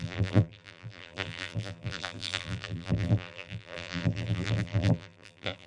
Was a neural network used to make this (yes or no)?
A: yes